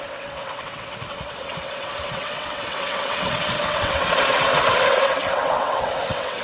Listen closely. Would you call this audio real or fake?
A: fake